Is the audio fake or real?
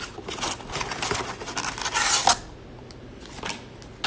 real